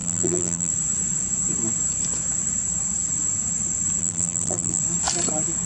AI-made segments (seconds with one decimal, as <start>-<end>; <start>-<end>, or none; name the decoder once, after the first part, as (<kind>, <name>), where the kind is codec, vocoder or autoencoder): 0.0-0.7 (vocoder, BigVGAN v2); 4.0-4.8